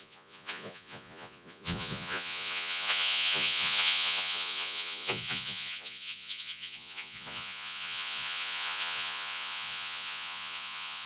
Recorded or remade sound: remade